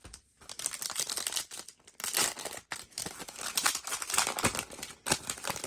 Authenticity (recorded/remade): recorded